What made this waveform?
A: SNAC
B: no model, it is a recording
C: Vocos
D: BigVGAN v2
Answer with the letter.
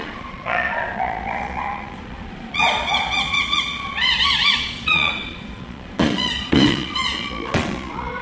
C